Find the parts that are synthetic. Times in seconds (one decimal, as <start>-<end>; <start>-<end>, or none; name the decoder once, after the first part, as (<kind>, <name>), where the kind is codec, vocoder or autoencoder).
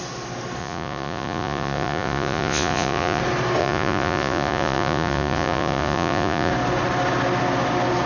0.6-3.2 (vocoder, Vocos); 3.6-6.5